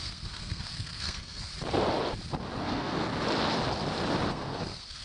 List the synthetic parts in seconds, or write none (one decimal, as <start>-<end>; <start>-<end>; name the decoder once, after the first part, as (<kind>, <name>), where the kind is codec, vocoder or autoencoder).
0.0-1.5 (codec, SNAC); 2.6-3.1; 4.3-5.0